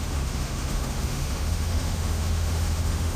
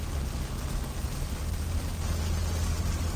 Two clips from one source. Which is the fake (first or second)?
first